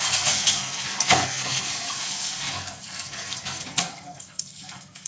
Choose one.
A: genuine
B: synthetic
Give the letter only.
B